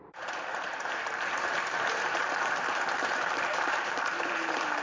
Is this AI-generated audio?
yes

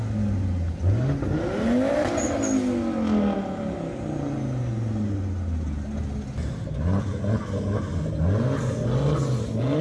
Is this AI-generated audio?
no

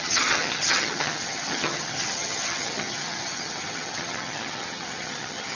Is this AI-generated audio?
yes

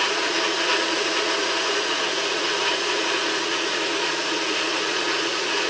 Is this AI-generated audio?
yes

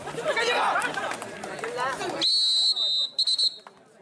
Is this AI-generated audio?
no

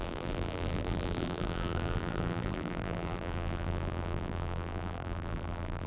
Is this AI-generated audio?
yes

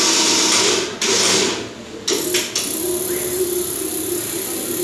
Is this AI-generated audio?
no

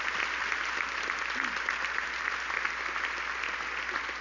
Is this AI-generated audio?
no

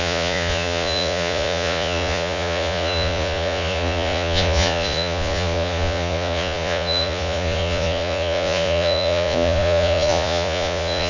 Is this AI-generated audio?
yes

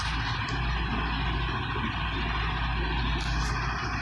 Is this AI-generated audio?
no